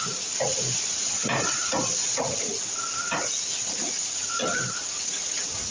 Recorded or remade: remade